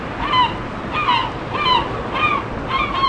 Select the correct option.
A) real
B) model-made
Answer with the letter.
A